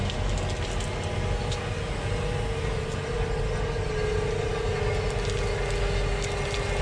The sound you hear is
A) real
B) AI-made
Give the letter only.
A